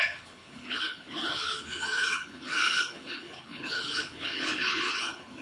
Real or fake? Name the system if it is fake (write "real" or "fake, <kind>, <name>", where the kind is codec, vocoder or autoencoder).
fake, codec, HILCodec